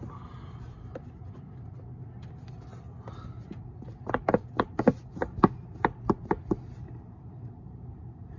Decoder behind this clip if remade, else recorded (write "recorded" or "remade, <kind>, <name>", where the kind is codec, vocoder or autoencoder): recorded